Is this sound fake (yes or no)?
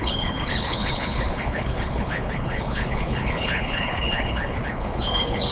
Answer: yes